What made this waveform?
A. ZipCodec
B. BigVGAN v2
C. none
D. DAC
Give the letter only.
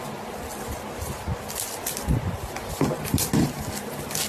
C